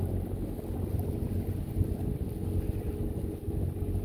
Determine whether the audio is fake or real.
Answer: real